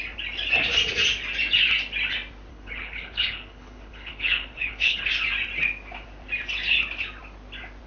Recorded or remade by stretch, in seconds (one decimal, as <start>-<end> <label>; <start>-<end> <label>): 0.0-2.5 recorded; 2.5-5.1 remade; 5.1-7.9 recorded

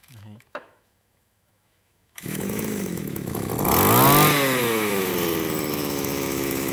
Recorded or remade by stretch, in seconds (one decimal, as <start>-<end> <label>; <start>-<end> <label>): 0.0-3.5 remade; 3.5-4.6 recorded; 4.6-5.1 remade; 5.1-5.7 recorded; 5.7-6.7 remade

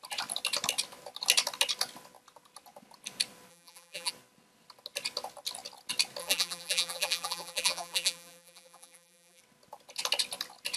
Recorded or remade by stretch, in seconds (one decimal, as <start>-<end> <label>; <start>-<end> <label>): 0.0-3.5 recorded; 3.5-4.1 remade; 4.1-6.2 recorded; 6.2-9.4 remade; 9.4-10.8 recorded

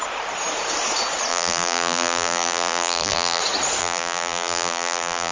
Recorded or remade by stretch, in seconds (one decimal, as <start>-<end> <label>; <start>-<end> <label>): 0.0-1.3 recorded; 1.3-3.4 remade; 3.4-3.8 recorded; 3.8-5.3 remade

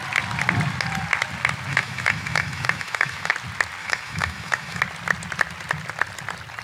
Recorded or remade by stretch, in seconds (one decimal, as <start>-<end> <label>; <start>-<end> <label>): 0.0-1.7 recorded; 1.7-3.3 remade; 3.3-3.8 recorded; 3.8-4.8 remade; 4.8-6.6 recorded